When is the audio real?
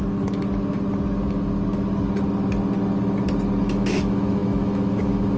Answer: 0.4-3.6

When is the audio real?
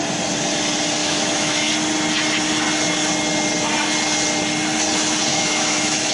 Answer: 0.0-1.0; 1.7-5.3